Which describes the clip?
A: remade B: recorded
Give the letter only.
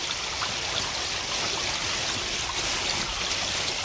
B